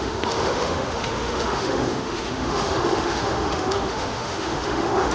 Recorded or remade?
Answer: remade